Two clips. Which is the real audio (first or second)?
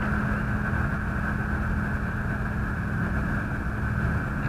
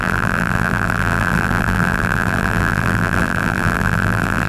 first